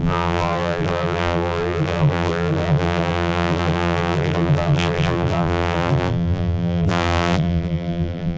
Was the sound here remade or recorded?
remade